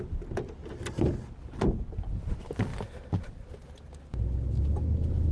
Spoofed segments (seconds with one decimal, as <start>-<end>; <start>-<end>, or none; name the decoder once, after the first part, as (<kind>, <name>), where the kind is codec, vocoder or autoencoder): none